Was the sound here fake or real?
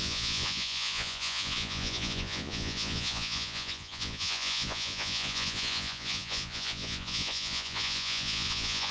fake